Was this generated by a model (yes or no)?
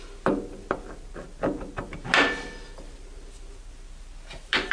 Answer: no